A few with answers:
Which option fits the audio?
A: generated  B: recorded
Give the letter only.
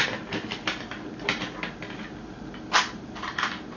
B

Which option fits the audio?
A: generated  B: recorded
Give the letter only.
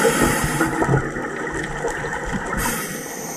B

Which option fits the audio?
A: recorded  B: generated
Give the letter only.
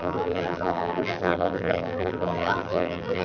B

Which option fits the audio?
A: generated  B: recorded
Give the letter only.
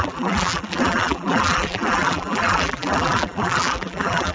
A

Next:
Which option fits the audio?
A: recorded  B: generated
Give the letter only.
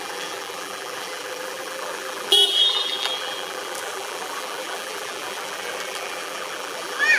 B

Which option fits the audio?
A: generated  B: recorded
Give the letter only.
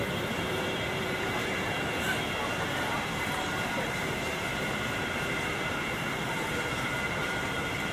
A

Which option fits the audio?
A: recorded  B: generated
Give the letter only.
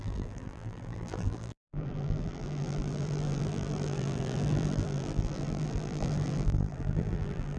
B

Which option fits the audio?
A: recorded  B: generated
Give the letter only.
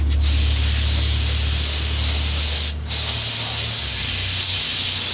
A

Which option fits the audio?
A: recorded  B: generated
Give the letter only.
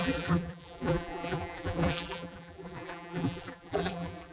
B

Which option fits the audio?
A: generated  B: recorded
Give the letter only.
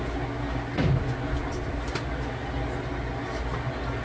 B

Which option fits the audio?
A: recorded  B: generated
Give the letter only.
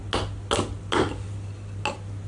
A